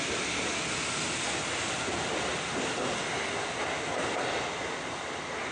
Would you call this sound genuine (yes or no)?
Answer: yes